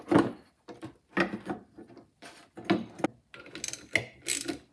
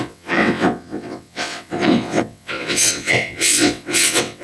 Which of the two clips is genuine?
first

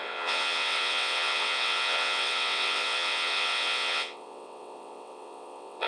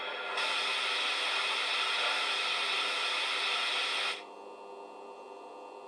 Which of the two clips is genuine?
second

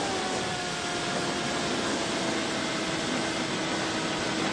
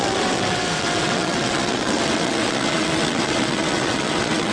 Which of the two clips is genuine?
first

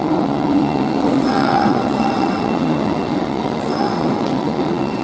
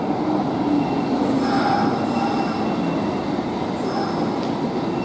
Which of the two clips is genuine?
second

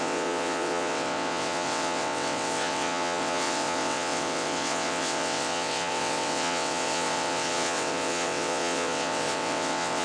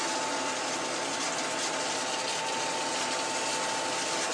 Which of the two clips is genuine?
second